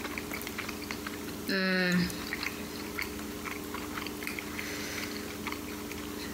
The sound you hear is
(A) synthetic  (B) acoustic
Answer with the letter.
B